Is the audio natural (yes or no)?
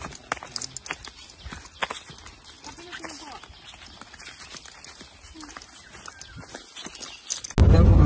yes